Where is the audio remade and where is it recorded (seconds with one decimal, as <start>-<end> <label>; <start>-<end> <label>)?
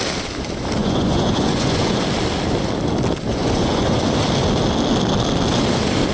0.0-0.8 recorded; 0.8-2.0 remade; 2.0-3.3 recorded; 3.3-4.0 remade; 4.0-6.1 recorded